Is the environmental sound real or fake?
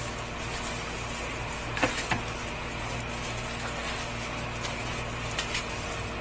real